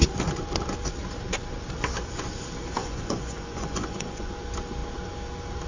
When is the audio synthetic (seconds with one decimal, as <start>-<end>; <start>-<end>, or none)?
2.8-4.3

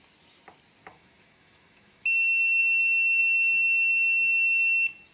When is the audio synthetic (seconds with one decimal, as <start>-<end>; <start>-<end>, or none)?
0.9-2.6

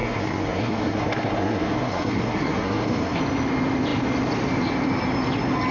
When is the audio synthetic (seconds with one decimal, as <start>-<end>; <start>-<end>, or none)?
0.0-3.2